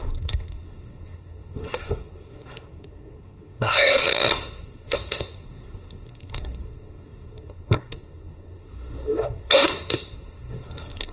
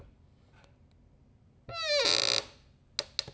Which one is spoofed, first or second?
first